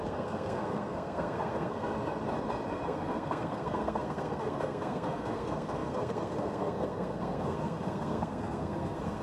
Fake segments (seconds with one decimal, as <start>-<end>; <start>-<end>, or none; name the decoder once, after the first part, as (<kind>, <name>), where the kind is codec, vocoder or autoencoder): 0.0-1.9 (codec, SNAC); 2.7-9.2